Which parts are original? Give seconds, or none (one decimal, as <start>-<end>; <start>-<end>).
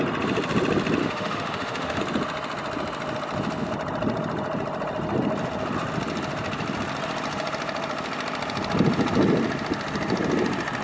0.0-1.0; 2.0-10.8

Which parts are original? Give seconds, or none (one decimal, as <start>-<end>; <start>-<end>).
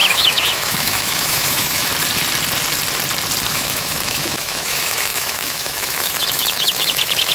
1.9-3.5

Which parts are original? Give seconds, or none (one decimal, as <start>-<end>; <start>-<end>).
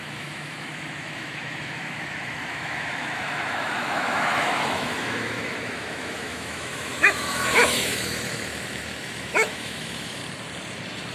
10.2-11.1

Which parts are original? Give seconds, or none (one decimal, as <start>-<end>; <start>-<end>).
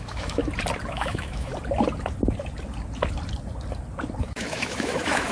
0.4-0.9; 1.5-4.2